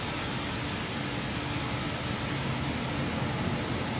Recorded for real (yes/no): yes